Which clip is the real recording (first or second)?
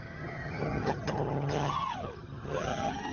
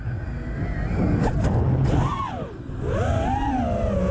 second